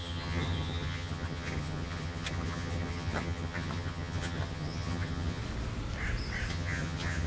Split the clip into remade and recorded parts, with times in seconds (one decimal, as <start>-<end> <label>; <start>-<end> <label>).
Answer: 0.0-5.4 remade; 5.4-6.5 recorded; 6.5-7.3 remade